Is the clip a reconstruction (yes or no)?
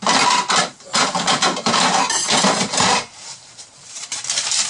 yes